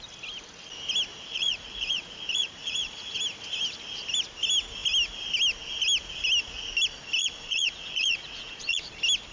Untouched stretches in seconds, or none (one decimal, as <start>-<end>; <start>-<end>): 0.0-1.1; 3.2-7.2; 8.9-9.3